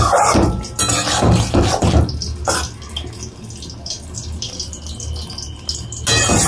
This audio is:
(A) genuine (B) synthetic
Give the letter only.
A